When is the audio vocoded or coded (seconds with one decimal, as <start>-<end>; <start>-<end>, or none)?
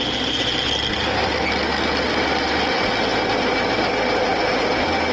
none